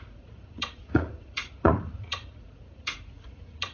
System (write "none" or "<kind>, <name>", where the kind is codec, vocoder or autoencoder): vocoder, Vocos